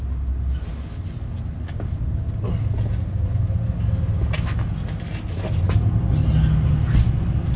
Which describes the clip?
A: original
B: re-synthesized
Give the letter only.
A